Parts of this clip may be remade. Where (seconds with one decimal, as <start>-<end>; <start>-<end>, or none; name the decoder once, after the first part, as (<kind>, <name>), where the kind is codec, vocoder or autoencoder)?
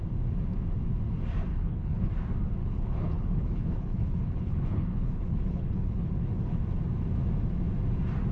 1.5-2.1 (codec, HILCodec); 2.6-6.6